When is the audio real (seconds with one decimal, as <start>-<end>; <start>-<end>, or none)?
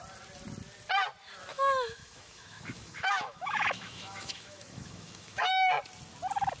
0.0-1.5; 5.5-6.6